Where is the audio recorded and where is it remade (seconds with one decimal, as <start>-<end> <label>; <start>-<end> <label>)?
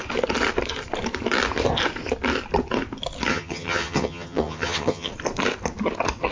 0.0-3.3 recorded; 3.3-5.1 remade; 5.1-6.3 recorded